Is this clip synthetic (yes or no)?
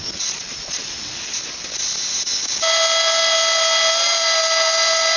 no